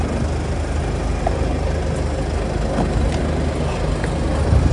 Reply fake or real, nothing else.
real